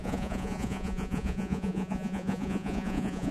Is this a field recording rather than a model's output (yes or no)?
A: no